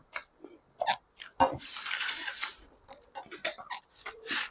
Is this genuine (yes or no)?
yes